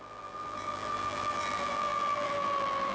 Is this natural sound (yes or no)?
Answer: no